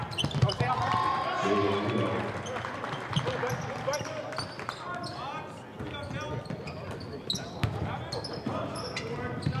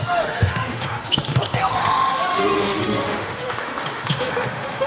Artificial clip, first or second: second